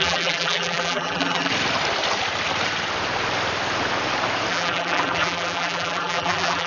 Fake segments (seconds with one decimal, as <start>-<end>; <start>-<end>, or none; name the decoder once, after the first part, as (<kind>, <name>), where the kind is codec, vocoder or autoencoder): 0.0-1.5 (vocoder, BigVGAN v2); 4.5-6.7